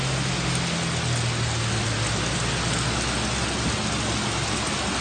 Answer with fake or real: real